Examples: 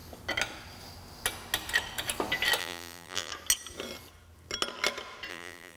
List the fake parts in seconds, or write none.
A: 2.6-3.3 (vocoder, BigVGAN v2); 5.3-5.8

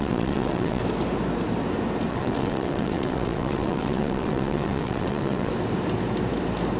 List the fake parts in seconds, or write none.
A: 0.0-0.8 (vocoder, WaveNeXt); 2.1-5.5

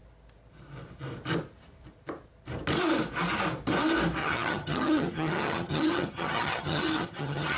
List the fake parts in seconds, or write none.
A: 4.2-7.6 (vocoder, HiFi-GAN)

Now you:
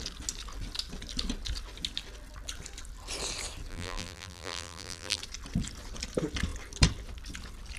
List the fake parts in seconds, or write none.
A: 3.7-5.2 (vocoder, BigVGAN v2)

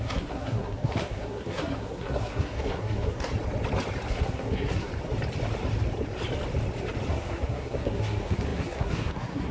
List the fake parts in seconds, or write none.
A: 0.0-3.3 (codec, SNAC); 4.1-4.9; 7.1-9.5

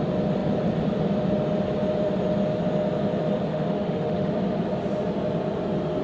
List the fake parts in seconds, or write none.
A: 3.5-4.3 (autoencoder, DAC-VAE)

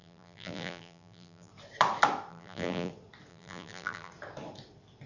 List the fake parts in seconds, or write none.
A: 0.0-1.5 (vocoder, BigVGAN v2); 2.3-2.9; 3.3-4.1

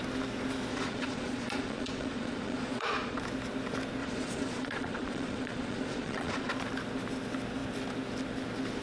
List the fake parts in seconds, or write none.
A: 0.7-3.2 (vocoder, Vocos); 4.0-6.5